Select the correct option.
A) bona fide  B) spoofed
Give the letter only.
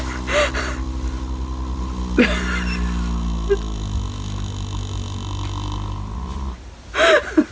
A